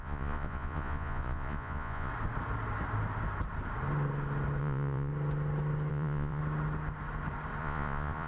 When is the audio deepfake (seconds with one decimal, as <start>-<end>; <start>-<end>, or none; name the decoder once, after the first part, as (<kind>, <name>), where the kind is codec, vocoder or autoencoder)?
0.0-2.1 (vocoder, Vocos); 4.6-5.1; 5.9-6.4; 7.6-8.3